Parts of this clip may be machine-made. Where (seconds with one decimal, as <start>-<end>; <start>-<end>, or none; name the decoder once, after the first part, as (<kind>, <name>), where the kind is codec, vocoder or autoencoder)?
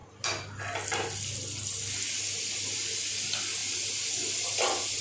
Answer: none